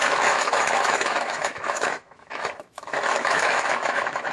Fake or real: fake